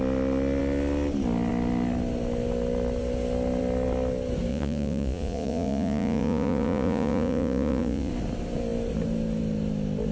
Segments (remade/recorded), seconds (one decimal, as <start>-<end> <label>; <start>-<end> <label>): 0.0-4.5 recorded; 4.5-8.1 remade; 8.1-10.1 recorded